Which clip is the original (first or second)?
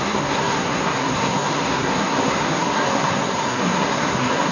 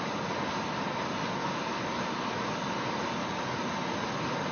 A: second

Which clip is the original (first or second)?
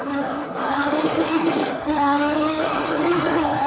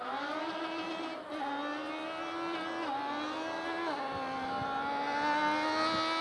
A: second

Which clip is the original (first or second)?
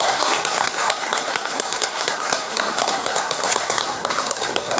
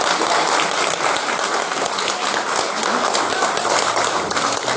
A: second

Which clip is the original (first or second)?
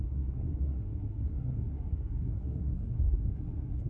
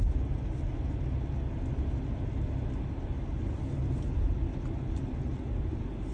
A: second